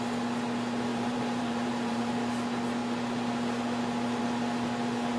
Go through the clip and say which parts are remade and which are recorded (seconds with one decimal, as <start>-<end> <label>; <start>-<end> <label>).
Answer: 0.0-0.9 recorded; 0.9-2.1 remade; 2.1-5.2 recorded